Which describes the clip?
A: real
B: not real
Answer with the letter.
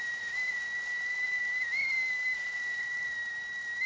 A